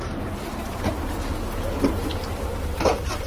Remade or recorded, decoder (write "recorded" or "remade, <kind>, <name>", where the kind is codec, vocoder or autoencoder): remade, vocoder, BigVGAN v2